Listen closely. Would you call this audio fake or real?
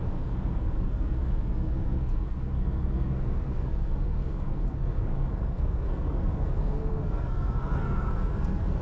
fake